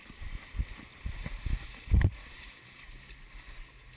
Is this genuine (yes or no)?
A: yes